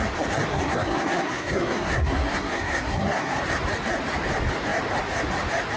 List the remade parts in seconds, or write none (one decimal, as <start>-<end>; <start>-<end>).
0.5-3.4